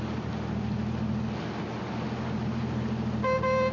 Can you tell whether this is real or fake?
real